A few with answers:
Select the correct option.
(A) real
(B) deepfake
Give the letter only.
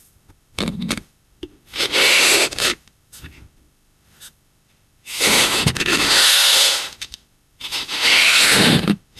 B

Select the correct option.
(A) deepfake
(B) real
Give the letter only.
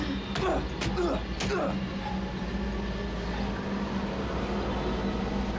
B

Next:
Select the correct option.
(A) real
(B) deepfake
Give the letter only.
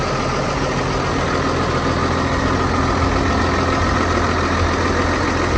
A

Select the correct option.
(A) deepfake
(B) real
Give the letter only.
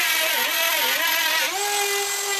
B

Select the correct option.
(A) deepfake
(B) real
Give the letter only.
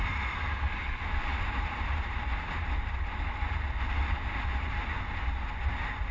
B